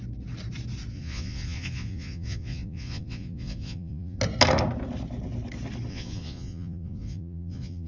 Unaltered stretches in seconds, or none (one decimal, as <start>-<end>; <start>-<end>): 0.0-0.9; 4.2-5.9